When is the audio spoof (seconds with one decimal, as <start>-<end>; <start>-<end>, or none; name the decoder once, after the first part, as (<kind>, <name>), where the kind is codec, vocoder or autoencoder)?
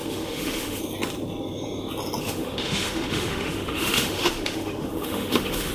0.0-0.8 (autoencoder, DAC-VAE); 2.2-5.7